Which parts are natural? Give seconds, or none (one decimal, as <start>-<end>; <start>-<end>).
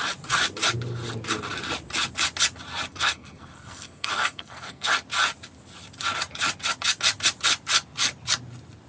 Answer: 0.0-2.9; 4.9-8.9